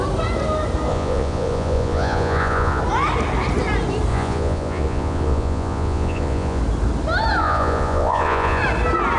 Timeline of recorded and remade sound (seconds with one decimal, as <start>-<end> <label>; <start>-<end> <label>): 0.0-0.9 recorded; 0.9-2.8 remade; 2.8-4.1 recorded; 4.1-6.6 remade; 6.6-7.4 recorded; 7.4-8.6 remade; 8.6-9.2 recorded